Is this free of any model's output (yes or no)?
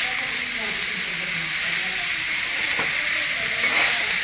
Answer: yes